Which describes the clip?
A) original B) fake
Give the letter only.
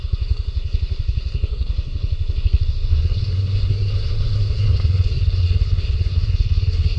B